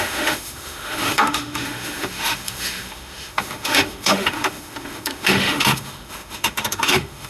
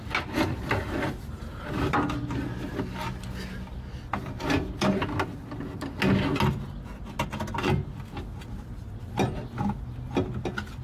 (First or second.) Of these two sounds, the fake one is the first